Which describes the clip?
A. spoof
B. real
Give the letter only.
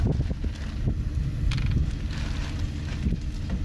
B